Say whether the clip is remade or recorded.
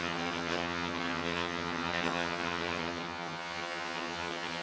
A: remade